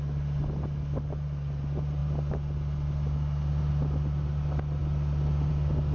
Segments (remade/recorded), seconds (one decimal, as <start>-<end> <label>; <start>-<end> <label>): 0.0-5.9 recorded

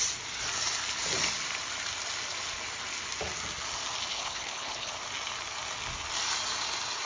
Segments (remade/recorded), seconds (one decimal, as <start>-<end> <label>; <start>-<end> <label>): 0.0-4.1 recorded; 4.1-4.9 remade; 4.9-7.1 recorded

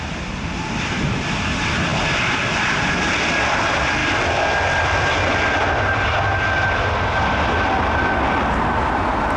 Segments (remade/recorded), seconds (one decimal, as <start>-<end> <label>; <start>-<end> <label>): 0.0-9.4 recorded

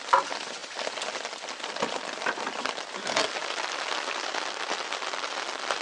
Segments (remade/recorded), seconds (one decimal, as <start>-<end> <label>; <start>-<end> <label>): 0.0-5.8 recorded